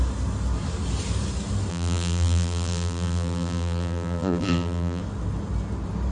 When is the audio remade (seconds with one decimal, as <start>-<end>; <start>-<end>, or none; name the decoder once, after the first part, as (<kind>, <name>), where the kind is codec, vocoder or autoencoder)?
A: 1.7-5.0 (vocoder, BigVGAN v2)